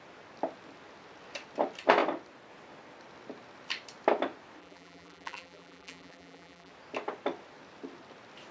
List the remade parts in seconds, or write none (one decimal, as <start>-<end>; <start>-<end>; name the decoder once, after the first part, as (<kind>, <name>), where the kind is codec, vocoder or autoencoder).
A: 4.6-6.7 (vocoder, BigVGAN v2)